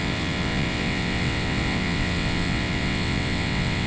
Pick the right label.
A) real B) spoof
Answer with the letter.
B